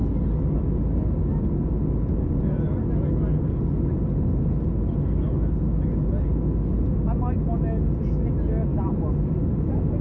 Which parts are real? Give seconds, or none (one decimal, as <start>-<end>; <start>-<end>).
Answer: 0.0-10.0